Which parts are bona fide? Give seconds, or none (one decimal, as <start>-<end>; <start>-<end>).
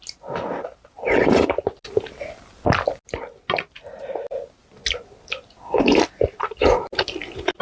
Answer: 0.0-7.6